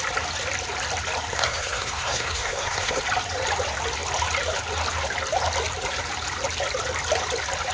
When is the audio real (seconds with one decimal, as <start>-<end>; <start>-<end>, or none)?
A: 0.0-1.3; 3.0-7.7